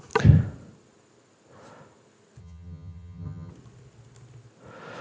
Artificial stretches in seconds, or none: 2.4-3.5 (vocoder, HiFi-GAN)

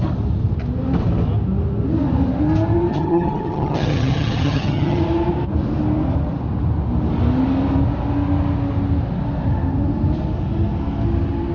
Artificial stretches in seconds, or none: 2.9-5.0 (vocoder, HiFi-GAN)

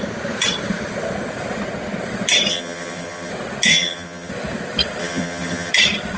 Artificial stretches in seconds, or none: 2.5-3.3 (vocoder, HiFi-GAN); 3.7-4.3; 5.0-5.7

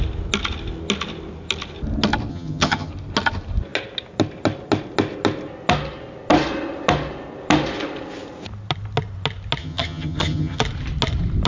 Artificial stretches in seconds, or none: 2.3-2.9 (vocoder, HiFi-GAN); 9.6-10.6